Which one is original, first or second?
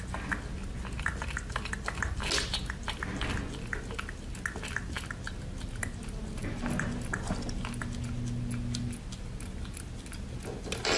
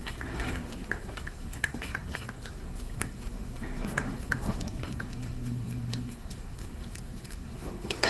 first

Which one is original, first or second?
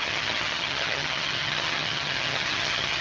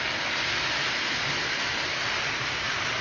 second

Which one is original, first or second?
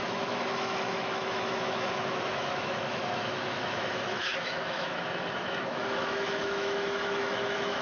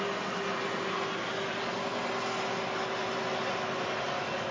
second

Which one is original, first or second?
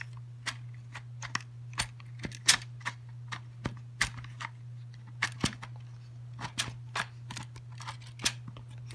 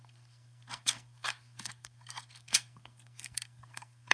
first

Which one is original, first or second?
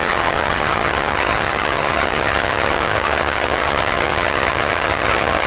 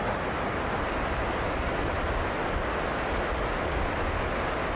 second